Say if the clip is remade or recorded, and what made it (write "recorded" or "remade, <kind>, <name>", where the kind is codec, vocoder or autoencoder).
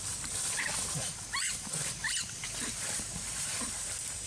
remade, vocoder, BigVGAN v2